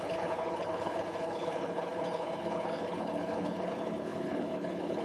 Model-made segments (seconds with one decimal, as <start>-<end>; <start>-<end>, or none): 0.0-5.0